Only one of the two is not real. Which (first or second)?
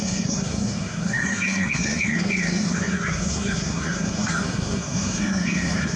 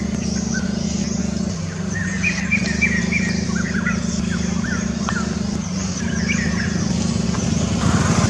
first